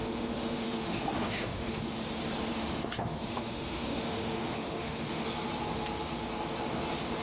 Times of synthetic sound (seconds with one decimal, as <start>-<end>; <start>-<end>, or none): 0.0-1.8; 2.5-5.2